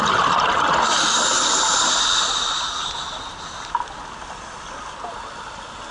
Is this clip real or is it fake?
real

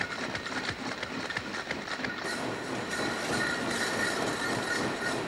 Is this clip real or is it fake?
real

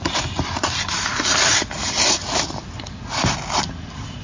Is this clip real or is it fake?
real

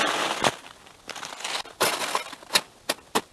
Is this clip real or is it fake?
real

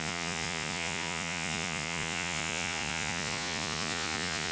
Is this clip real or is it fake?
fake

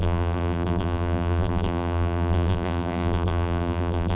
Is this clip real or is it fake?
fake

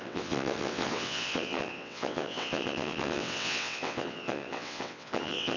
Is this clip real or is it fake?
fake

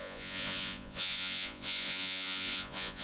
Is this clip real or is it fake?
fake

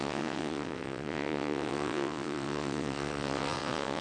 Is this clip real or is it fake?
fake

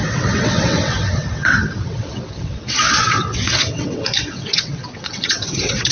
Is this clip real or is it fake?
fake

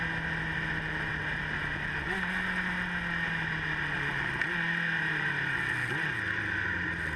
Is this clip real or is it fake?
real